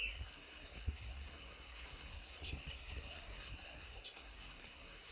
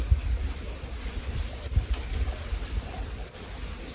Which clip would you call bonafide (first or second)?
second